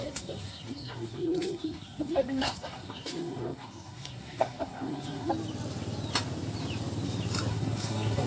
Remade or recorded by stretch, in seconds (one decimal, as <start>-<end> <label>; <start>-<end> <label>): 0.0-5.3 remade; 5.3-7.5 recorded; 7.5-8.3 remade